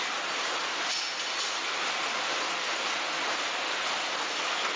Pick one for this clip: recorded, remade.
recorded